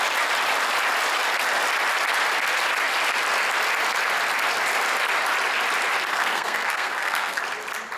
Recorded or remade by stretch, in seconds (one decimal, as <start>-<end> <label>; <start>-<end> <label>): 0.0-6.1 recorded; 6.1-7.4 remade; 7.4-8.0 recorded